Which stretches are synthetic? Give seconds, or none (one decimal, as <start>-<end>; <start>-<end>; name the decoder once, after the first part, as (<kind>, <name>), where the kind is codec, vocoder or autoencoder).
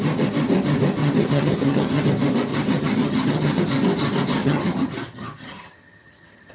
1.0-2.0 (vocoder, HiFi-GAN); 2.5-3.6; 4.4-6.5